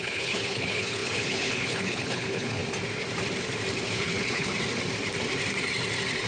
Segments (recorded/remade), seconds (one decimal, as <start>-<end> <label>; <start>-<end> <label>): 0.0-2.6 remade; 2.6-3.9 recorded; 3.9-4.5 remade; 4.5-6.3 recorded

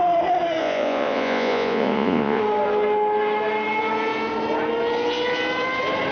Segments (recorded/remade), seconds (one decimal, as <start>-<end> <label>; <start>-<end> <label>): 0.0-0.6 recorded; 0.6-2.4 remade; 2.4-6.1 recorded